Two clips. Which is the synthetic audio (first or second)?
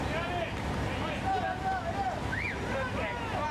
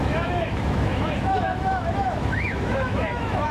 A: second